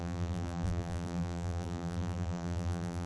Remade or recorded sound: remade